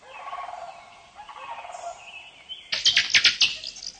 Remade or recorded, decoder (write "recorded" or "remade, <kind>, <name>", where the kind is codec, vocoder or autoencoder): recorded